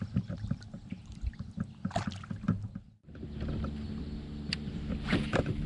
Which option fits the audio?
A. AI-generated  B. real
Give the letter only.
B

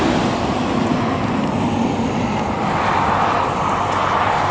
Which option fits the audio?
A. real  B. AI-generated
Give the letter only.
A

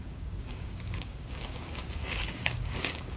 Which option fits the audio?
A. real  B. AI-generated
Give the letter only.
B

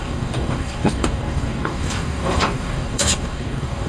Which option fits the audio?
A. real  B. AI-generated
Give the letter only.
B